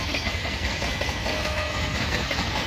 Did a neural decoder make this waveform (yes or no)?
yes